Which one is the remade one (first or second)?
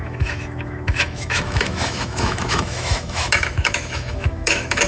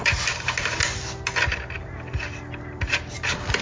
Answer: first